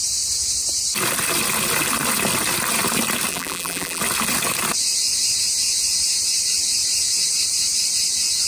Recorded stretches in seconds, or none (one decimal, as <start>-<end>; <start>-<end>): 0.0-3.3; 4.0-8.5